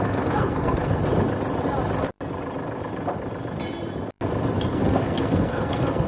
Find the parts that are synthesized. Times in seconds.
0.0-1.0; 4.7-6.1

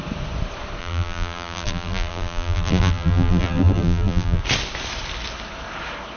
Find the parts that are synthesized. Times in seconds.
0.8-4.4

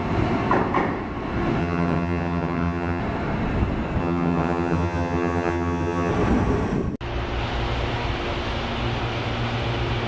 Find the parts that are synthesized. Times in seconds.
1.6-3.0; 4.0-6.1